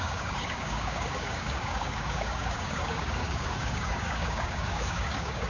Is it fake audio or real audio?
fake